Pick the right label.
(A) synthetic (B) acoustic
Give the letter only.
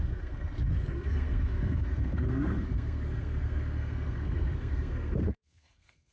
A